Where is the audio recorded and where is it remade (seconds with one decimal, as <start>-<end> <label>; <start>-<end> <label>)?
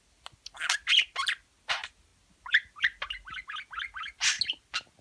0.0-5.0 recorded